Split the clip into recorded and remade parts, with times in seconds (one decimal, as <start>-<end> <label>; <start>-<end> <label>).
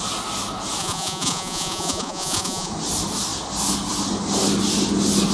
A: 0.0-0.8 recorded; 0.8-2.7 remade; 2.7-5.3 recorded